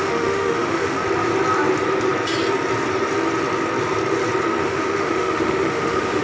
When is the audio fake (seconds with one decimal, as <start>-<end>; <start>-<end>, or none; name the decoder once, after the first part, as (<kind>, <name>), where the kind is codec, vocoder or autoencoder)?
0.0-1.0 (autoencoder, DAC-VAE); 4.6-6.2